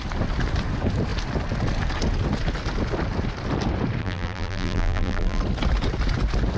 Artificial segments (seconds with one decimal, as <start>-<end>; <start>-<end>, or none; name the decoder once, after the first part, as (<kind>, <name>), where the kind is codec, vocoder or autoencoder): 4.0-5.4 (vocoder, BigVGAN v2)